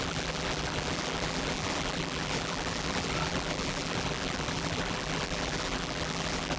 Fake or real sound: fake